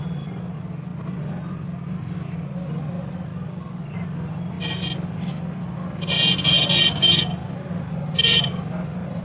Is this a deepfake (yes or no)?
no